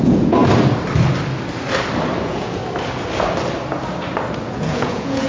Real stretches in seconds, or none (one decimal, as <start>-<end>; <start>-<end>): 0.4-2.2; 2.6-4.5